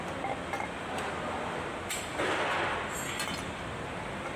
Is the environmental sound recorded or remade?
recorded